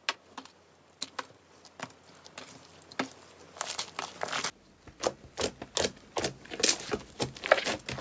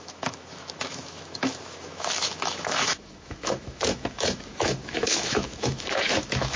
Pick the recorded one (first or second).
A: first